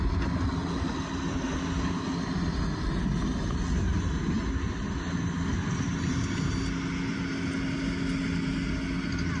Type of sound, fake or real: real